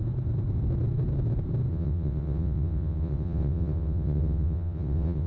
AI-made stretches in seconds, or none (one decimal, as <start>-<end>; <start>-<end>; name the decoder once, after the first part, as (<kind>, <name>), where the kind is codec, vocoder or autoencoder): 1.7-5.3 (vocoder, WaveNeXt)